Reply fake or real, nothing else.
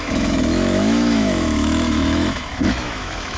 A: fake